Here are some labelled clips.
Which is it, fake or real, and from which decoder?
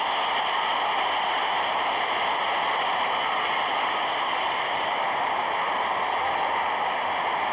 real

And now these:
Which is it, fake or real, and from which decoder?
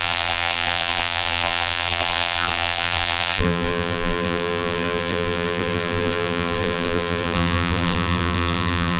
fake, vocoder, BigVGAN v2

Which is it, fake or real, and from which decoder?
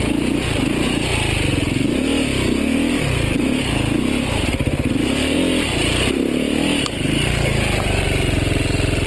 real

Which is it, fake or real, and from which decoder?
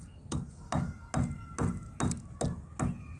real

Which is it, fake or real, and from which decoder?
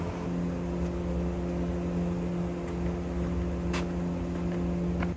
real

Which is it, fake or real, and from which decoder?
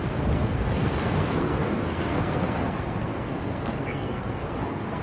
fake, codec, SNAC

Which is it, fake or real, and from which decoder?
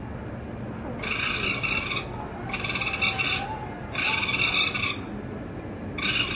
real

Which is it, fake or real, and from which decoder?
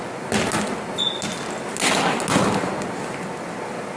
real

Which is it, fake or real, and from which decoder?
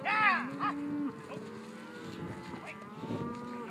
real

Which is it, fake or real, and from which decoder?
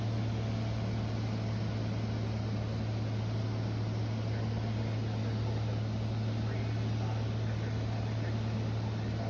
real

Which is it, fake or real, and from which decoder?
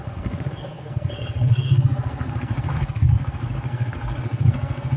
fake, codec, SNAC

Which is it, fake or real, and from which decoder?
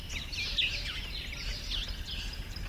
real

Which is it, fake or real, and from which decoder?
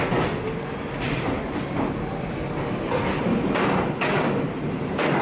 real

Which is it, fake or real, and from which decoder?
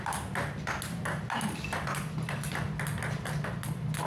real